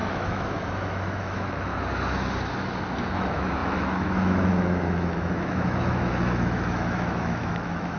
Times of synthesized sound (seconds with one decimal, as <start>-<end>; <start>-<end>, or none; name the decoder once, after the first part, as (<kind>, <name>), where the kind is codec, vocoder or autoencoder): 0.0-1.7 (autoencoder, DAC-VAE); 3.1-8.0